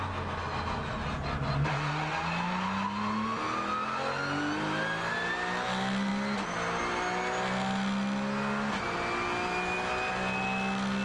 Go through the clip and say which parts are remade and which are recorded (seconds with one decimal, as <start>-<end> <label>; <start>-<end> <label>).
0.0-11.0 recorded